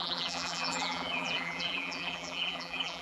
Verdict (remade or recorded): remade